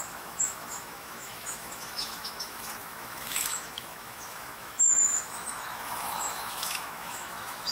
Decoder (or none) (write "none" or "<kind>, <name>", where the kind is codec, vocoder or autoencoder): autoencoder, DAC-VAE